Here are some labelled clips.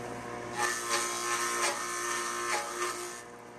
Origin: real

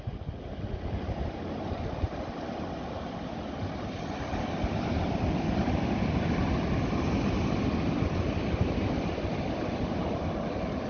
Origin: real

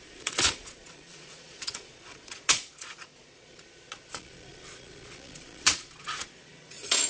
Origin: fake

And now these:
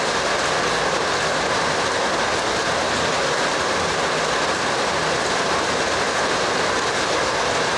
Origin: real